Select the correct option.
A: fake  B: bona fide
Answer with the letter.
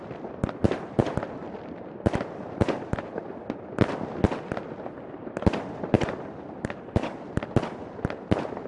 B